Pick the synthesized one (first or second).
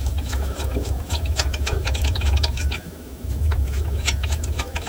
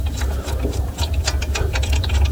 first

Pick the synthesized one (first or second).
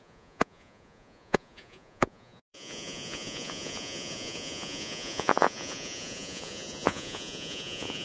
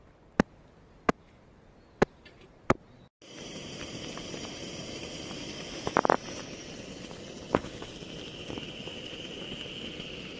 first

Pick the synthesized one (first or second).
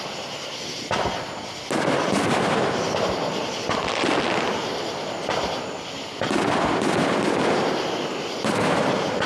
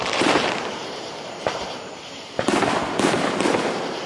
second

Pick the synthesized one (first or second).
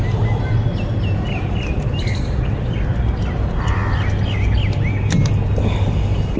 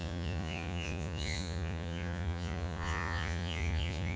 second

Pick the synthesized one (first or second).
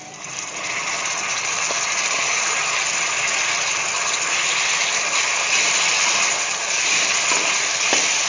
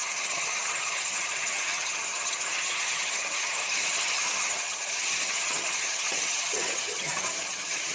second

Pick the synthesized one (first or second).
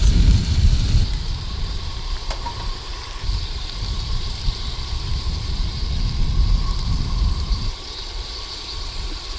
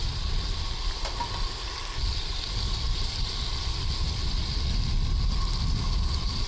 first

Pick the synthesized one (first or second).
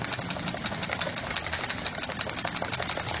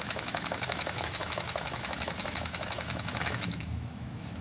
second